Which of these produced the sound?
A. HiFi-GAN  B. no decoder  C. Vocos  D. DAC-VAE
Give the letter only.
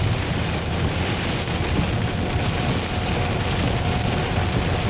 B